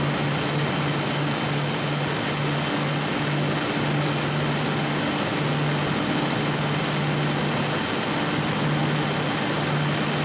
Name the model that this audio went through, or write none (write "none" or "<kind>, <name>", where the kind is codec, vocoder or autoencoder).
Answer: none